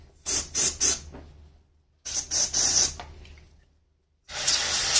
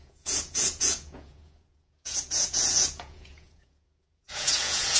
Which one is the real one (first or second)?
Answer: first